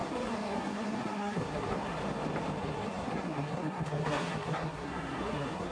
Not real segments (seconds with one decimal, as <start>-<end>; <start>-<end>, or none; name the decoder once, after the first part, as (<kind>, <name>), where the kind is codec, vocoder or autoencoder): 0.0-2.0 (codec, SNAC); 2.6-5.7